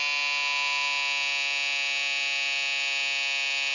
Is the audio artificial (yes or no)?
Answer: no